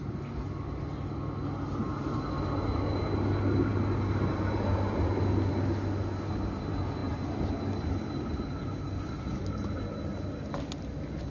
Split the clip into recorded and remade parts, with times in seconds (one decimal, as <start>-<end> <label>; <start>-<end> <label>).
0.0-11.3 recorded